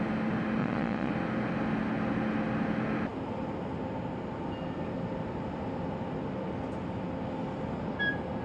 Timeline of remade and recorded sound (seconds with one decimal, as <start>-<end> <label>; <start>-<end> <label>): 0.0-0.6 recorded; 0.6-1.1 remade; 1.1-8.4 recorded